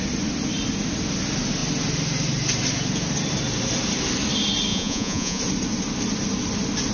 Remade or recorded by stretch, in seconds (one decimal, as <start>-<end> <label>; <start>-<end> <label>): 0.0-4.7 recorded; 4.7-5.4 remade; 5.4-6.9 recorded